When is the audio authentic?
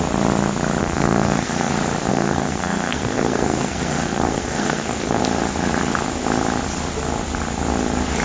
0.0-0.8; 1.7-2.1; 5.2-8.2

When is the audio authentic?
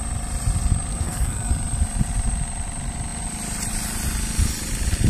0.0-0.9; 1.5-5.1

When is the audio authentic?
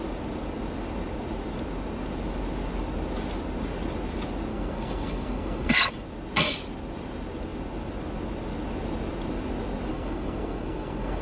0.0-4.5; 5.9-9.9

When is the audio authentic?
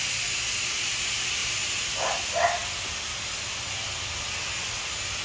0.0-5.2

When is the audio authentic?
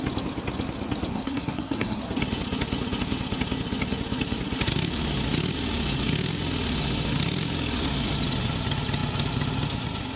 0.0-1.1; 2.0-10.2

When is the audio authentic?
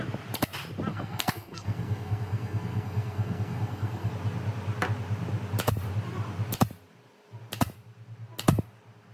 0.0-0.9; 4.1-9.1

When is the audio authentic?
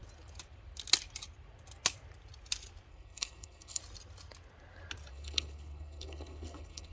0.0-2.9; 3.8-5.1